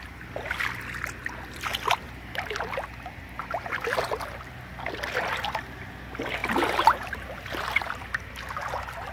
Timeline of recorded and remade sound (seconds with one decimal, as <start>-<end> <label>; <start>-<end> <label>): 0.0-3.4 recorded; 3.4-4.1 remade; 4.1-6.4 recorded; 6.4-8.3 remade; 8.3-9.1 recorded